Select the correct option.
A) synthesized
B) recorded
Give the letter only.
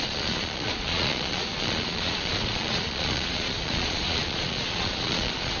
A